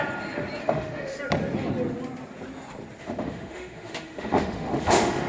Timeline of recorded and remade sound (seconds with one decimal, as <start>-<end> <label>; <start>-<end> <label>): 0.0-0.6 recorded; 0.6-1.2 remade; 1.2-3.0 recorded; 3.0-5.3 remade